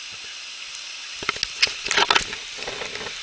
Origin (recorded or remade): recorded